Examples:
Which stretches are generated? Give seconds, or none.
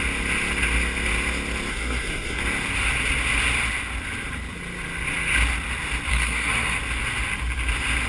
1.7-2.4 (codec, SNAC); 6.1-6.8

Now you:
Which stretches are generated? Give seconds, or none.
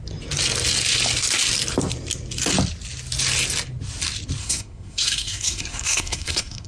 4.4-6.7 (codec, SNAC)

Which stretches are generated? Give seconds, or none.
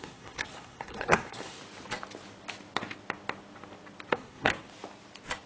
0.0-1.6 (codec, SNAC); 4.1-4.5